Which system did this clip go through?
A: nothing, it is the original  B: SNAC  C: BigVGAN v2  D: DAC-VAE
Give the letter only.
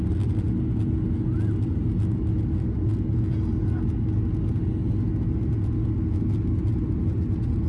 A